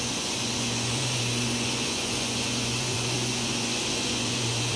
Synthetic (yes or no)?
yes